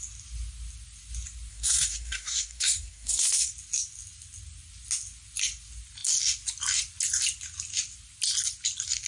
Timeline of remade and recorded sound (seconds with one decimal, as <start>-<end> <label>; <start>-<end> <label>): 0.0-1.5 recorded; 1.5-3.5 remade; 3.5-9.1 recorded